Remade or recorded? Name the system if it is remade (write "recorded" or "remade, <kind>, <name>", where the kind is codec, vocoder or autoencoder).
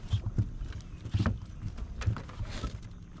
recorded